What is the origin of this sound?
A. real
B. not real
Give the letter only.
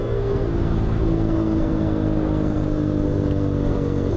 B